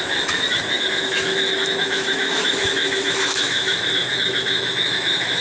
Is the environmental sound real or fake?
fake